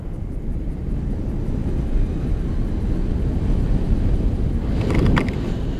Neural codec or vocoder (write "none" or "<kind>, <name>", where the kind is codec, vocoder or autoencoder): none